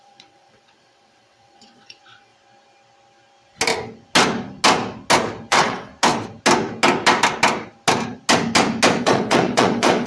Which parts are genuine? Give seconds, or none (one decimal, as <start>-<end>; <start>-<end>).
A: 2.3-5.5; 5.9-9.0